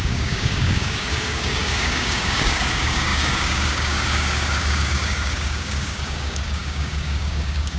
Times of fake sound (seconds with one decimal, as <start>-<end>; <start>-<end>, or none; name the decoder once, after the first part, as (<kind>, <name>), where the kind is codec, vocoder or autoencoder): 0.0-7.8 (codec, DAC)